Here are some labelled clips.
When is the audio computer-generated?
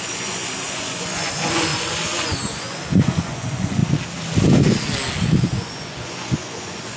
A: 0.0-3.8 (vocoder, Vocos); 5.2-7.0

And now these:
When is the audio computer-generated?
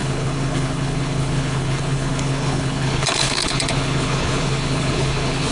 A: 0.0-5.5 (codec, HILCodec)